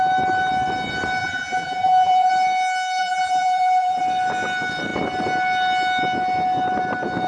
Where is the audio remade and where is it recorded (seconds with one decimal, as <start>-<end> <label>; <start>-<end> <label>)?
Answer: 0.0-1.2 recorded; 1.2-2.3 remade; 2.3-3.0 recorded; 3.0-4.0 remade; 4.0-7.3 recorded